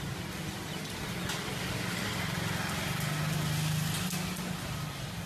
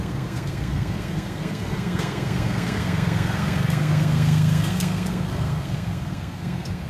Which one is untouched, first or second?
first